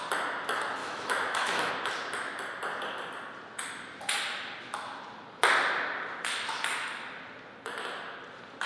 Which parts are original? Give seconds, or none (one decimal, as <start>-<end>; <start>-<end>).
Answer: 0.0-0.8; 1.7-8.7